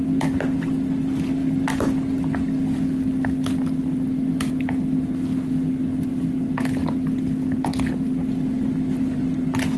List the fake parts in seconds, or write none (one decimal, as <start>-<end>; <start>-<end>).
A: none